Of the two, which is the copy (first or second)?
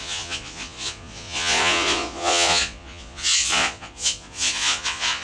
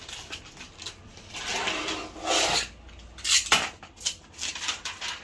first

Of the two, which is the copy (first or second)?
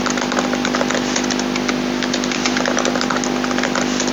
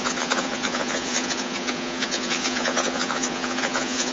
second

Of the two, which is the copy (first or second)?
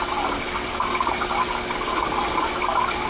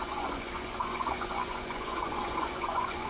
second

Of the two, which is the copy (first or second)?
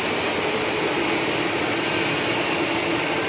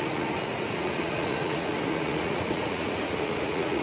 second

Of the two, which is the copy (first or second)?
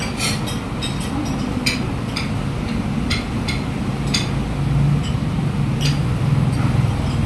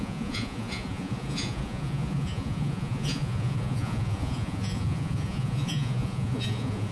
second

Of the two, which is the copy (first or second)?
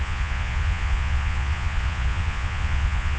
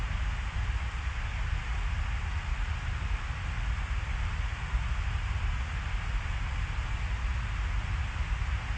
first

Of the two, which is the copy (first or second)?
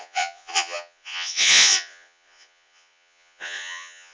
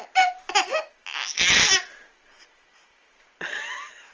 first